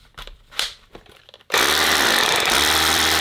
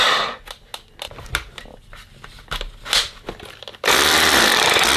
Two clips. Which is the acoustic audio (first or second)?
second